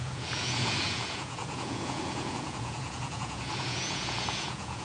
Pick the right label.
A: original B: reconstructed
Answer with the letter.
B